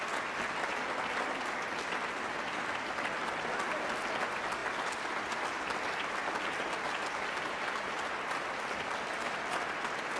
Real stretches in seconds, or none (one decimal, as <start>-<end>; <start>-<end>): 0.0-10.2